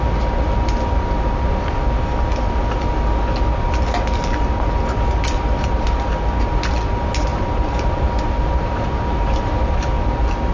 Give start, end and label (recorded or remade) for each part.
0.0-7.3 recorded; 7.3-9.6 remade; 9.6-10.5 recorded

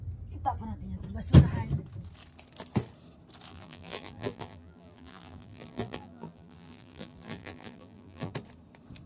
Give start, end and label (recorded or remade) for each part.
0.0-3.5 recorded; 3.5-8.3 remade; 8.3-9.1 recorded

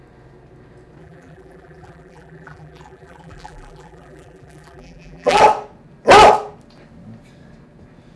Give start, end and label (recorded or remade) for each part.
0.0-1.0 recorded; 1.0-5.4 remade; 5.4-8.2 recorded

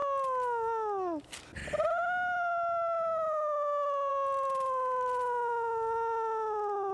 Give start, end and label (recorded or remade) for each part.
0.0-6.9 recorded

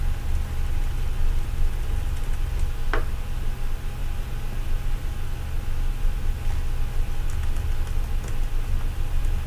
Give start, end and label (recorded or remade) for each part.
0.0-9.5 recorded

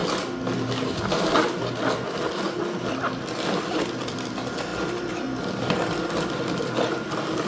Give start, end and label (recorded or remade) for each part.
0.0-2.9 recorded; 2.9-7.5 remade

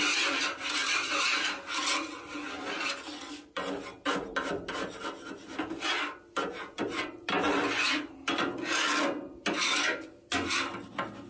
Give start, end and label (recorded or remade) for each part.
0.0-11.3 recorded